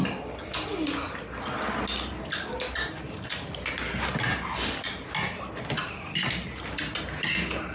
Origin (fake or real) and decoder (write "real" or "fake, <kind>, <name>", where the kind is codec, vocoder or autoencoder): real